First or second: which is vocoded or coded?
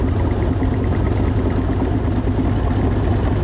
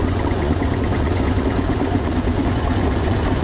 second